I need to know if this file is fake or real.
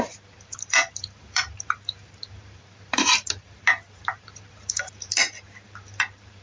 fake